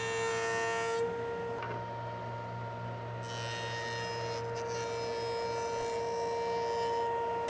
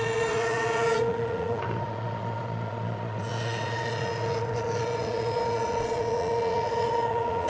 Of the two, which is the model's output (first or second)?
second